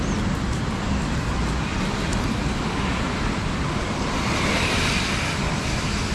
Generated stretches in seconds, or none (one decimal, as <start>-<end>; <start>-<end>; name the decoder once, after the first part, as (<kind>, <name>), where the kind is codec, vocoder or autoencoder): 2.1-4.5 (vocoder, BigVGAN v2)